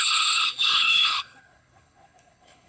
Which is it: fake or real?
fake